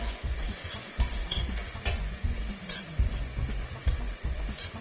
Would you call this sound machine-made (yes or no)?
yes